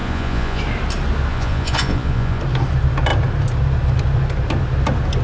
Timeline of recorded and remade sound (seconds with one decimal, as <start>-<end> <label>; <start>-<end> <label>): 0.0-0.6 remade; 0.6-1.3 recorded; 1.3-2.4 remade; 2.4-5.2 recorded